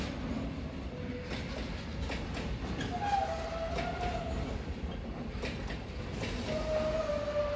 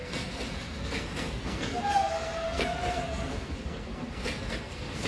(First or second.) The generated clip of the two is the second